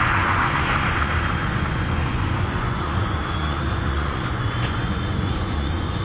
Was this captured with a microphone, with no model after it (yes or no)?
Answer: no